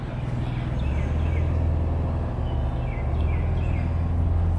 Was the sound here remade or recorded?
recorded